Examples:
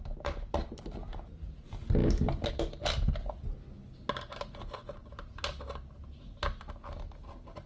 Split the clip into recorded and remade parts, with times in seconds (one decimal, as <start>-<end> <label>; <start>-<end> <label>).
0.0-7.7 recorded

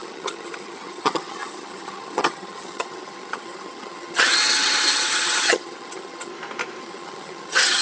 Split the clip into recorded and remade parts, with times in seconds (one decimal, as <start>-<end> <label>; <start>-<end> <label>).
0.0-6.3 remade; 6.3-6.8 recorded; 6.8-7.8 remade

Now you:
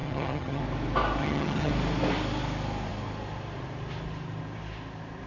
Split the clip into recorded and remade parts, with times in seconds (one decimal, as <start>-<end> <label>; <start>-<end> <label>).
0.0-0.6 remade; 0.6-1.2 recorded; 1.2-1.7 remade; 1.7-5.3 recorded

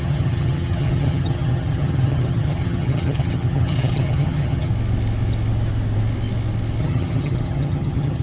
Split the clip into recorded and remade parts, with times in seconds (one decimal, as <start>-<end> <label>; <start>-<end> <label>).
0.0-4.7 remade; 4.7-6.8 recorded; 6.8-8.2 remade